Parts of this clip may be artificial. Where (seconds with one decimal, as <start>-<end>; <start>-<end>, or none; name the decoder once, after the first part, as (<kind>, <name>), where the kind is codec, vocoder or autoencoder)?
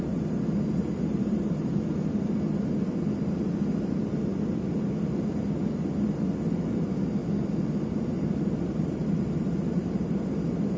1.1-1.7 (vocoder, BigVGAN v2); 7.2-10.1